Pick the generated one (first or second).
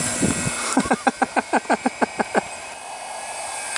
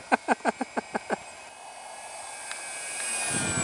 first